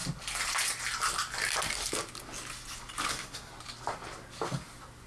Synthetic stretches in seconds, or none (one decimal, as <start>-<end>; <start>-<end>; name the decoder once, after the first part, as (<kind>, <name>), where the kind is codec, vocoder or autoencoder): 3.1-3.5 (codec, SNAC)

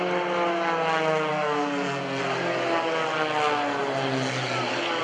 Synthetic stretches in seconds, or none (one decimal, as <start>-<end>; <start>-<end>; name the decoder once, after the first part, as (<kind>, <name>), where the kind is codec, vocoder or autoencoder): 1.3-2.2 (codec, SNAC)

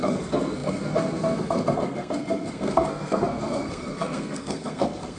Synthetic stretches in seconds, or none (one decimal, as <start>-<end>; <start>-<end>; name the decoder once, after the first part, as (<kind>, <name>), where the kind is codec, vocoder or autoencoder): 0.0-5.2 (codec, SNAC)

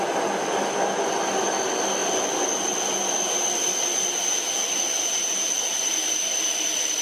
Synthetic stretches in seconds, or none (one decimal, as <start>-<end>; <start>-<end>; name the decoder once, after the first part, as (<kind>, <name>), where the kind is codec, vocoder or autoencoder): none

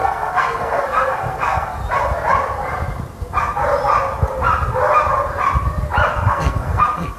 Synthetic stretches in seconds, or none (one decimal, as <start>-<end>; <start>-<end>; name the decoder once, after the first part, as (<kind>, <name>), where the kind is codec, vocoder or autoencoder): 0.0-1.8 (codec, SNAC); 6.1-7.2

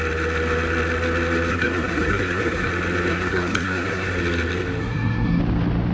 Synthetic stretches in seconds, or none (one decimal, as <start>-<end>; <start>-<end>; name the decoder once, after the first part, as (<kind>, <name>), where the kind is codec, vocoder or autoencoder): 1.5-2.7 (codec, SNAC); 3.1-4.1; 4.8-5.4

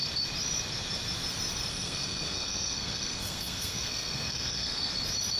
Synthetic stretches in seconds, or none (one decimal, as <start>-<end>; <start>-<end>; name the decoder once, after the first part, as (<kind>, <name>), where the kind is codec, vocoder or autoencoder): 1.7-4.9 (codec, SNAC)

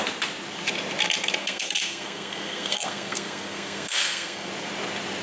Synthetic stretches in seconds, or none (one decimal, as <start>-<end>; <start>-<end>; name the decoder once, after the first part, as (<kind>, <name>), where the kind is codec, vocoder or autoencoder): 1.4-4.5 (codec, SNAC)